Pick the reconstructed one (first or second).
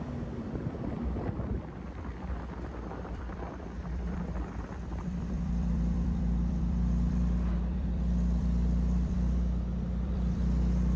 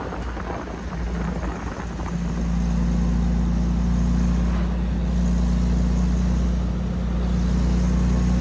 first